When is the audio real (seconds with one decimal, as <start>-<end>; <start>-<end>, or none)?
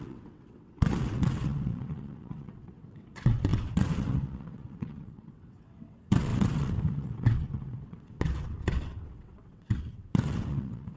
none